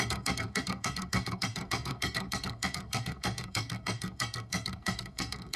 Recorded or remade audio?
remade